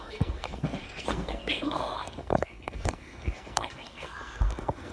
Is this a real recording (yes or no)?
no